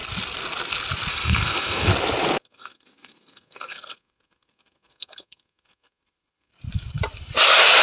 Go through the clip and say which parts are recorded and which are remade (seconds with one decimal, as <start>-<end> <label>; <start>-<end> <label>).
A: 0.0-1.1 recorded; 1.1-1.9 remade; 1.9-2.4 recorded; 2.4-6.5 remade; 6.5-7.8 recorded